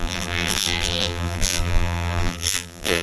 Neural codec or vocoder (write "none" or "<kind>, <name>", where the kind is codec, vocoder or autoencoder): vocoder, BigVGAN v2